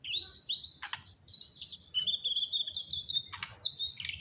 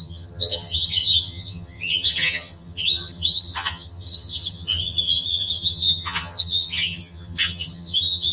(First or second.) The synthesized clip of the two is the second